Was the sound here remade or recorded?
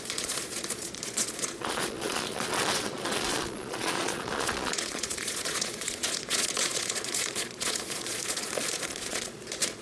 remade